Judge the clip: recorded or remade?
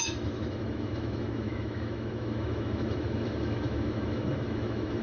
remade